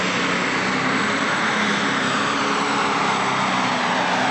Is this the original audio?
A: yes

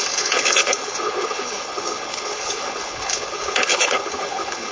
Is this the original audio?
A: no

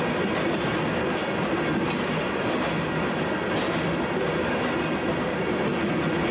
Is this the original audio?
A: yes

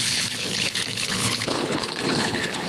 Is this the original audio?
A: no